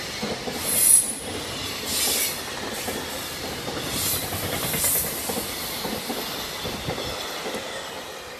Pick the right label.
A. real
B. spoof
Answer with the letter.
A